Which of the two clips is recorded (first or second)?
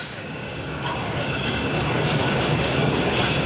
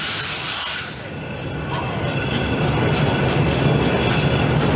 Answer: second